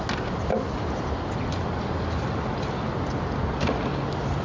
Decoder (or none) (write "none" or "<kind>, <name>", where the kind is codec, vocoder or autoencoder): none